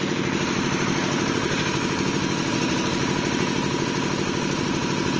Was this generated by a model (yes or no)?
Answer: no